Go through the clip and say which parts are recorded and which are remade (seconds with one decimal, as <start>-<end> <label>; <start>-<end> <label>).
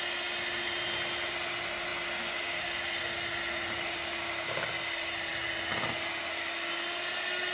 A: 0.0-7.5 recorded